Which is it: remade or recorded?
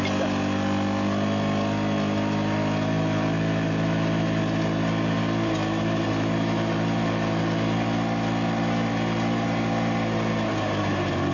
recorded